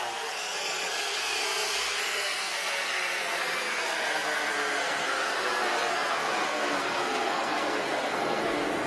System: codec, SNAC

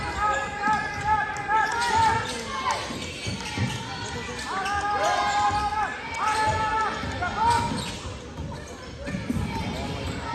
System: none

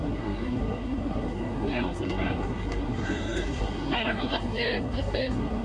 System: codec, SNAC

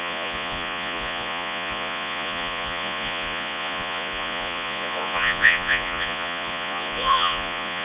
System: vocoder, Vocos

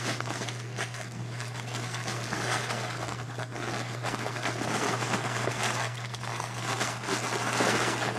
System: codec, SNAC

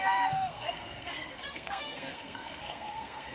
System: codec, SNAC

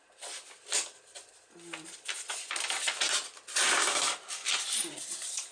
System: none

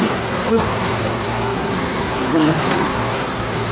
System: codec, SNAC